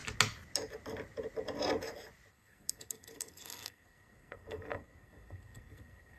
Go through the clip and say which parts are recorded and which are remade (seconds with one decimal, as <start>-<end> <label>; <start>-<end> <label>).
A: 0.0-2.3 recorded; 2.3-6.2 remade